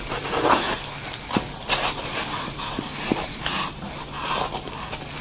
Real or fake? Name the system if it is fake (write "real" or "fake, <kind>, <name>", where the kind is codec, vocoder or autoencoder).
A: real